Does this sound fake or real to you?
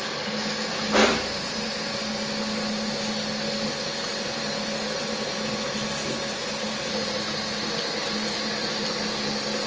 real